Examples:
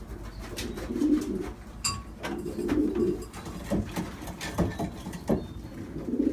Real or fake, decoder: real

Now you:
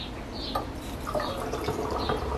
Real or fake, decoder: real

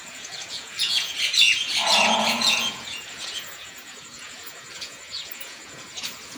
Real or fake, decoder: fake, vocoder, Vocos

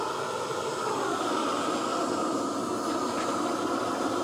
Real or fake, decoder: real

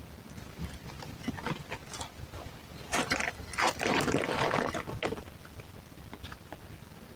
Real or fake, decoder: real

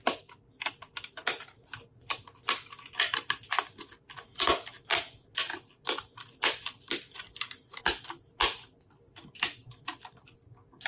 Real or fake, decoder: real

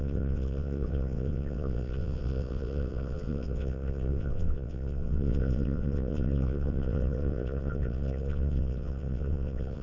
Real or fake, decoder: fake, vocoder, WaveNeXt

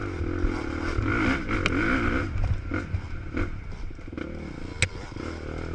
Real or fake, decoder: real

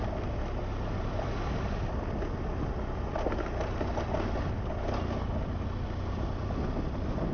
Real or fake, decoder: real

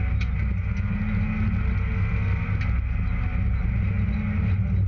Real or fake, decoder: real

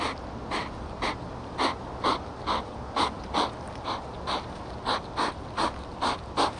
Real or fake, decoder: real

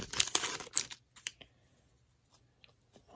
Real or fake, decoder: real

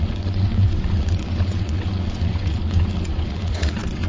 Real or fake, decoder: fake, vocoder, WaveNeXt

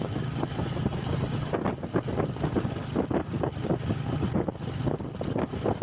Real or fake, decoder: real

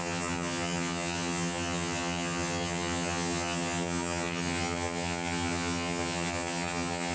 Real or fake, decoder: fake, vocoder, HiFi-GAN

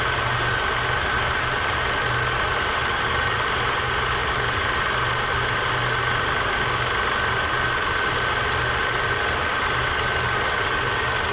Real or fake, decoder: real